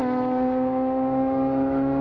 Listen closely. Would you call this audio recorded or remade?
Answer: remade